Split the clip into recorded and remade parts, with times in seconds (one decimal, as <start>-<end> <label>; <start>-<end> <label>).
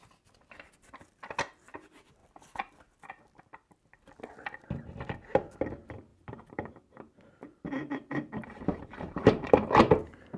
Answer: 0.0-6.1 recorded; 6.1-6.7 remade; 6.7-7.8 recorded; 7.8-9.8 remade; 9.8-10.4 recorded